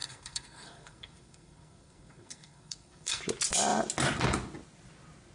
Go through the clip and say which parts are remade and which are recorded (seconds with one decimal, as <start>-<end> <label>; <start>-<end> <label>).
0.0-3.2 remade; 3.2-5.3 recorded